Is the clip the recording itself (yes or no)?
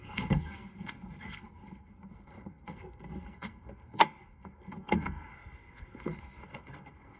no